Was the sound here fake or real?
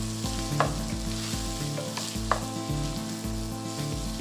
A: real